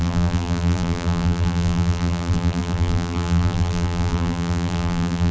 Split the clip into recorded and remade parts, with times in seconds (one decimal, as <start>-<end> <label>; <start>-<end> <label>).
0.0-5.3 remade